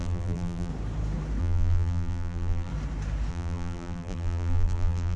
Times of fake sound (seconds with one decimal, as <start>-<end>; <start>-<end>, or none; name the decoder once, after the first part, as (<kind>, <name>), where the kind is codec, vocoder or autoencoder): 0.0-0.7 (vocoder, BigVGAN v2); 1.4-2.7; 3.3-5.2